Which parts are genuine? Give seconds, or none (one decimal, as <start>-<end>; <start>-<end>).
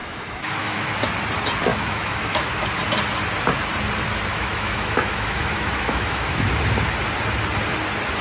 0.9-1.7; 2.7-4.3; 6.5-8.2